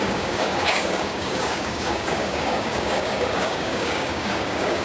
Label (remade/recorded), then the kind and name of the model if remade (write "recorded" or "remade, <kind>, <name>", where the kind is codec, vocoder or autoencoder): remade, codec, DAC